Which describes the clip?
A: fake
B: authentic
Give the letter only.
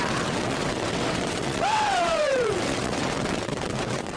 A